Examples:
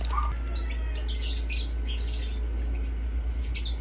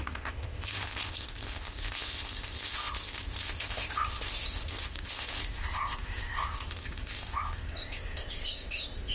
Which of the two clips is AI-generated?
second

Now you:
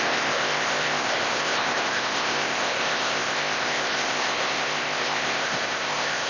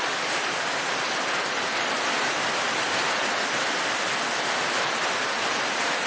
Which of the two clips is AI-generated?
first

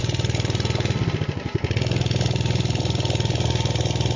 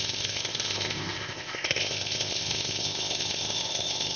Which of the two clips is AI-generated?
second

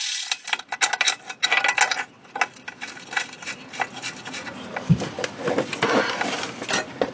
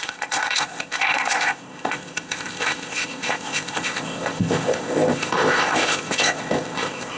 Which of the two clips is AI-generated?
second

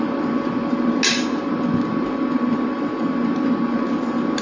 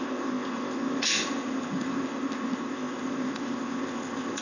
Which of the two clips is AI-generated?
second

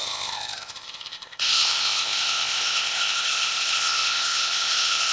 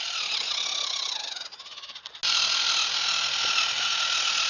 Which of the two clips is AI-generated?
first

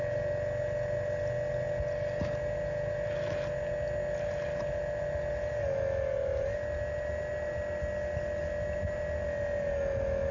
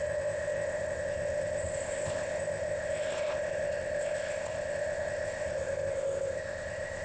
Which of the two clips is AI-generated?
second